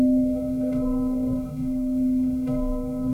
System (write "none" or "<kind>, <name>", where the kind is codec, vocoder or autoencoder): codec, SNAC